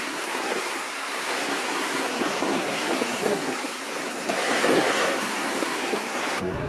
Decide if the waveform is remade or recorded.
remade